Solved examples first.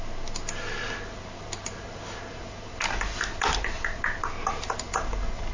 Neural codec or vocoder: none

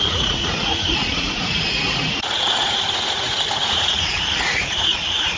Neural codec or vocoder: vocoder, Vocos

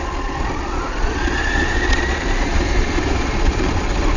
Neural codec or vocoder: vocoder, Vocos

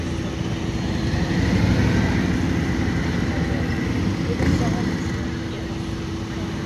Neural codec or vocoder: none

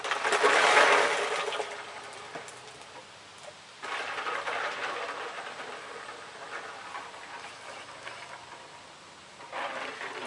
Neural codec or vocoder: none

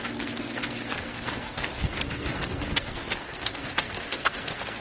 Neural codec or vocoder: codec, SNAC